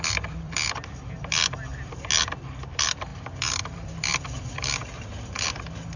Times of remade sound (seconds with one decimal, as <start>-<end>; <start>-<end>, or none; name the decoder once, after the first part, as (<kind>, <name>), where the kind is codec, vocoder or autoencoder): 0.0-1.7 (vocoder, BigVGAN v2); 2.7-6.0